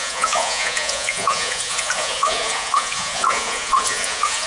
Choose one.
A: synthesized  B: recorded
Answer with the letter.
A